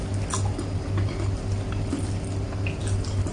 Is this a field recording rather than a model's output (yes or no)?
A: yes